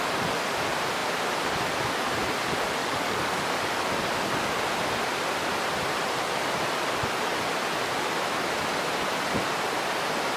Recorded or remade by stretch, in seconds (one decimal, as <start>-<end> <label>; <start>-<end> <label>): 0.0-2.8 recorded; 2.8-3.9 remade; 3.9-10.4 recorded